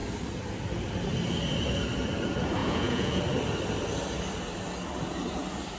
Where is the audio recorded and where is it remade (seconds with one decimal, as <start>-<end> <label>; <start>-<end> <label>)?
0.0-2.6 recorded; 2.6-3.2 remade; 3.2-5.8 recorded